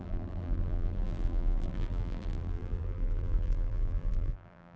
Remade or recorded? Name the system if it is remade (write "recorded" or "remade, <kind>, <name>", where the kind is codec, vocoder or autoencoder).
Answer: remade, vocoder, BigVGAN v2